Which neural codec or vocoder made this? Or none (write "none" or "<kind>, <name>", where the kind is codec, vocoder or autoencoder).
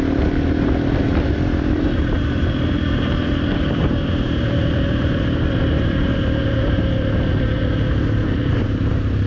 vocoder, BigVGAN v2